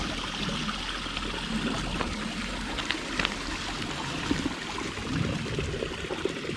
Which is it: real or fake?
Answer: real